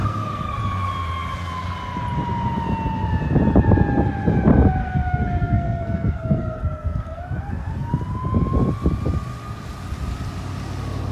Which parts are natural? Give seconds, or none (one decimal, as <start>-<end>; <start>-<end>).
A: 0.6-4.8; 7.9-11.1